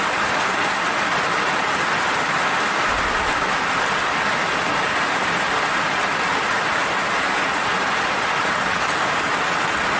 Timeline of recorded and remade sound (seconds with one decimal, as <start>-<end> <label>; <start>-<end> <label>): 0.0-10.0 recorded